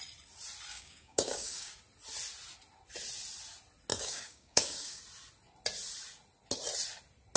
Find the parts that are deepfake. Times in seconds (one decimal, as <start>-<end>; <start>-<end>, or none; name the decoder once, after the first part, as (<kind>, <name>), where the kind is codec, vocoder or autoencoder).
0.7-1.7 (codec, DAC); 3.9-5.0